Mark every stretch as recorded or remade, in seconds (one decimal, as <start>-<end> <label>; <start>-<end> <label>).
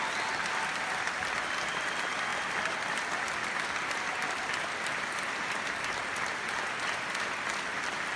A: 0.0-8.2 recorded